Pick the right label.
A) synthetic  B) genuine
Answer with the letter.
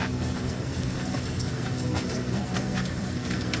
A